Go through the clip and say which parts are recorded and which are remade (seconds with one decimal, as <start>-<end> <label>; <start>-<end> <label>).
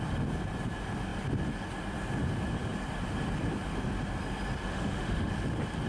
0.0-4.6 recorded; 4.6-5.3 remade; 5.3-5.9 recorded